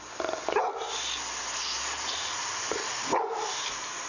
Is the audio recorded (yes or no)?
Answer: yes